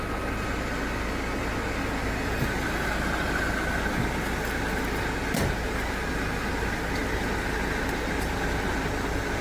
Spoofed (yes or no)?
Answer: no